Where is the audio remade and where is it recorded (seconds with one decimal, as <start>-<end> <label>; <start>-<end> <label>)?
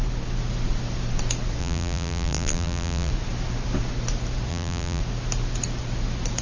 0.0-1.6 recorded; 1.6-3.1 remade; 3.1-4.5 recorded; 4.5-5.0 remade; 5.0-6.4 recorded